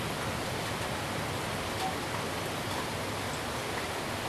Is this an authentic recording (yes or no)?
yes